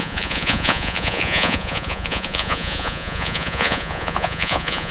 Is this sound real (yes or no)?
no